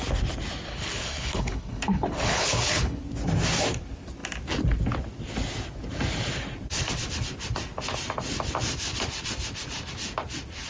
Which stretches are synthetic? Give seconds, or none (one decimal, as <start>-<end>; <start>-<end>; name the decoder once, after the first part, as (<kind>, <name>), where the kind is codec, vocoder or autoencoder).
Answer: 0.7-3.0 (codec, HILCodec)